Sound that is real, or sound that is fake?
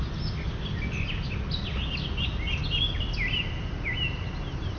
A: real